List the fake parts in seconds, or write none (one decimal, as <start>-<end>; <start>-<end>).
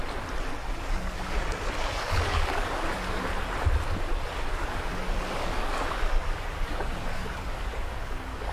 0.7-3.3; 4.5-8.5